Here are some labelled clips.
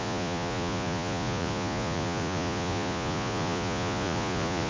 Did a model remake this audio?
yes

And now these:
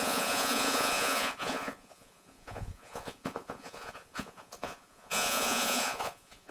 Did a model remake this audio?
yes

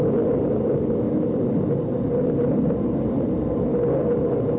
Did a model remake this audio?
no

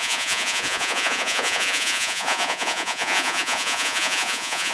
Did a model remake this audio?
yes